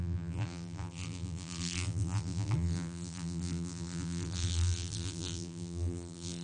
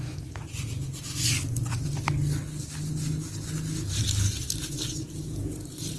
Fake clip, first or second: first